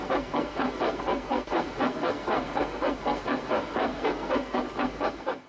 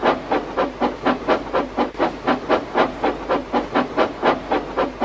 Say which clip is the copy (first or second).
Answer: first